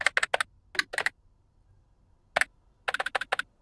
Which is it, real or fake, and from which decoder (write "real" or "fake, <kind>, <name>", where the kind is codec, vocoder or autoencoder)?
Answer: real